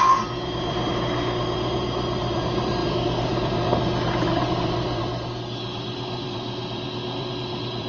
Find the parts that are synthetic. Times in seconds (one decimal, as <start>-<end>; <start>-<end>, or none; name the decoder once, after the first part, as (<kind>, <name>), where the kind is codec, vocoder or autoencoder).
0.0-7.9 (vocoder, BigVGAN v2)